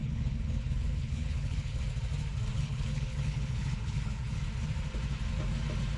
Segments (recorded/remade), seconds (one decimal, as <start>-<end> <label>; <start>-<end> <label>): 0.0-1.8 remade; 1.8-2.5 recorded; 2.5-4.4 remade; 4.4-6.0 recorded